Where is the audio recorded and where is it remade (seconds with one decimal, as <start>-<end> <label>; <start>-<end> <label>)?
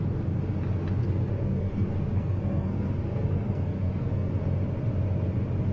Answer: 0.0-1.0 recorded; 1.0-4.3 remade; 4.3-5.7 recorded